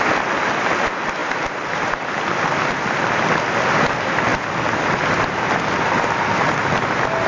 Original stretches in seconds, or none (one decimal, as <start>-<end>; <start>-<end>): 0.0-7.3